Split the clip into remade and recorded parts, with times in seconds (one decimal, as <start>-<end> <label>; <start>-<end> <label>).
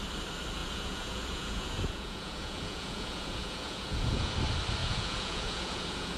0.0-0.6 recorded; 0.6-4.3 remade; 4.3-4.8 recorded; 4.8-6.2 remade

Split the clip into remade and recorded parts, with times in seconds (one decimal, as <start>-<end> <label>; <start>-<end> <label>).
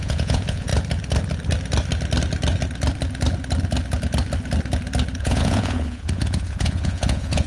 0.0-0.7 remade; 0.7-5.2 recorded; 5.2-7.5 remade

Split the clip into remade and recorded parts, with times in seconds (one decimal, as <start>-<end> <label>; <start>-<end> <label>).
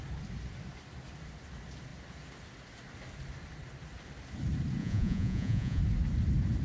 0.0-4.8 recorded; 4.8-5.8 remade; 5.8-6.6 recorded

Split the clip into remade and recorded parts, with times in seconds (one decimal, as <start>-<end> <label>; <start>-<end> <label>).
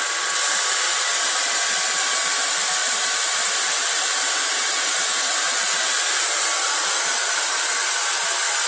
0.0-8.7 recorded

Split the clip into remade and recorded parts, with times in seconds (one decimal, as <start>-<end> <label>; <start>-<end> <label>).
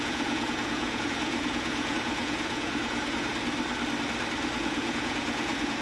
0.0-3.3 remade; 3.3-4.6 recorded; 4.6-5.8 remade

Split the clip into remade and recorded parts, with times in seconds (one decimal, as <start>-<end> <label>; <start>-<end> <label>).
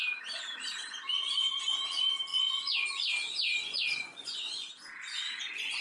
0.0-2.3 recorded; 2.3-5.8 remade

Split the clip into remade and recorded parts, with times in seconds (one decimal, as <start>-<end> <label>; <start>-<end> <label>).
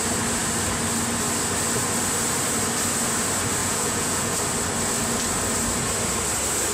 0.0-3.6 recorded; 3.6-4.4 remade; 4.4-6.7 recorded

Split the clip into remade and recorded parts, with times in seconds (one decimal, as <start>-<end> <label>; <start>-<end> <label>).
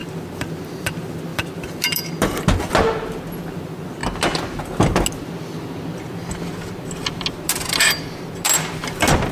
0.0-9.3 recorded